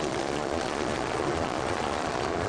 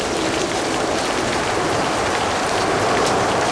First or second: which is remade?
first